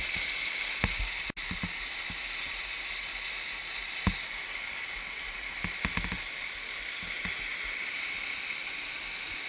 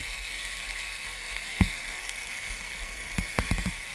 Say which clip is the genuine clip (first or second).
first